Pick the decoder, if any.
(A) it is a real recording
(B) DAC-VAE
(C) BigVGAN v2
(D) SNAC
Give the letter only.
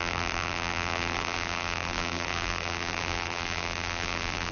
C